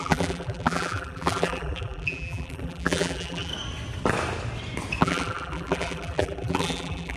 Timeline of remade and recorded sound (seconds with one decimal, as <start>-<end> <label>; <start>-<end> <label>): 0.0-3.5 remade; 3.5-5.0 recorded; 5.0-7.2 remade